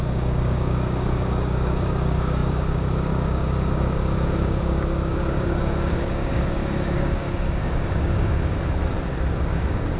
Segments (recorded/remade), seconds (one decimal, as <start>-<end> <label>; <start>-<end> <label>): 0.0-8.8 remade; 8.8-9.4 recorded; 9.4-10.0 remade